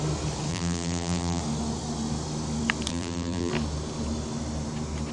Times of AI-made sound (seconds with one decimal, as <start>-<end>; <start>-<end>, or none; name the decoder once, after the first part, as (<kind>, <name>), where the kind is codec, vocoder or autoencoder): 0.5-1.4 (vocoder, BigVGAN v2); 2.9-3.5